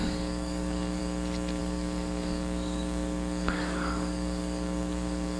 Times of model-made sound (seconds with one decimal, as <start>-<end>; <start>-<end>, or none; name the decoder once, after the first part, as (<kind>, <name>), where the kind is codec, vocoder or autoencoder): 0.0-1.0 (codec, DAC); 1.6-5.4